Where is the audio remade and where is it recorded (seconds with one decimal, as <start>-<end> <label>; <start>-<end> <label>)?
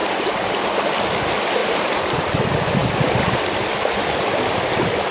0.0-1.6 recorded; 1.6-2.3 remade; 2.3-5.1 recorded